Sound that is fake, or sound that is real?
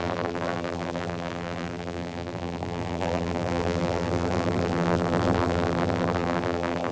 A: fake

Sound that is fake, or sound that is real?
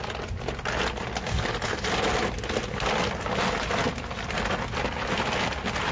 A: real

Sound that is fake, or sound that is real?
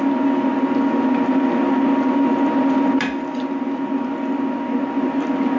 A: real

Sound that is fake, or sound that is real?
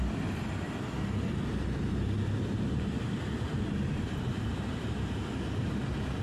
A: fake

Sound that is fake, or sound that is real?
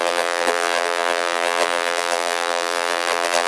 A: fake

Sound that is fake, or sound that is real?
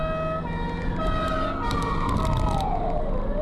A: real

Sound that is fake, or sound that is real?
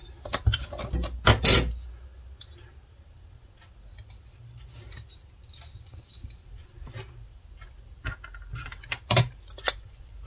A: real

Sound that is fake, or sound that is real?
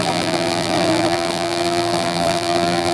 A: fake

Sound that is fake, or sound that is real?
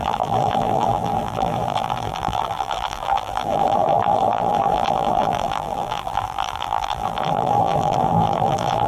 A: fake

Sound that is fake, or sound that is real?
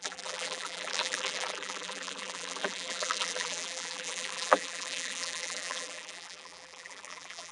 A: fake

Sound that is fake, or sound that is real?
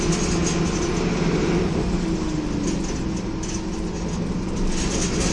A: real